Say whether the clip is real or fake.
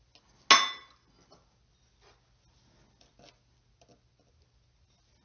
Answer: real